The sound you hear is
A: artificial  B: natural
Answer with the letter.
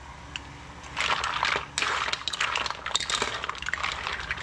B